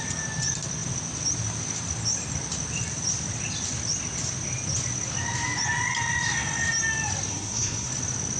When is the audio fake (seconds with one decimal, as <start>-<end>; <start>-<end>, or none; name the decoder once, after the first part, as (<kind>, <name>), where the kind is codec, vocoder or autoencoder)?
7.3-7.9 (codec, SNAC)